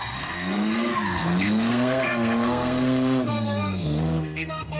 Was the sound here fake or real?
fake